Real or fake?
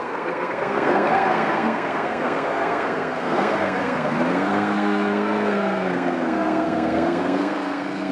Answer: fake